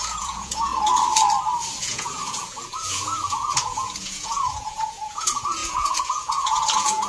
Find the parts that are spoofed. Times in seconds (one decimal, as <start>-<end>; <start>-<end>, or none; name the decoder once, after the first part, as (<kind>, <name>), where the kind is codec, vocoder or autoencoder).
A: 0.0-0.7 (vocoder, Vocos); 1.8-7.1